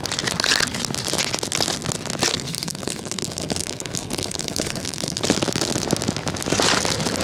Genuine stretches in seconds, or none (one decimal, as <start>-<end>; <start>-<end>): 0.0-2.3; 5.2-7.2